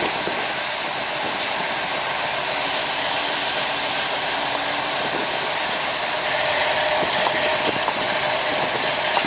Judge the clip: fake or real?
real